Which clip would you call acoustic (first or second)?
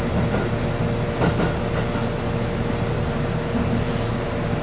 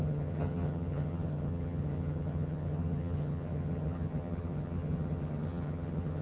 first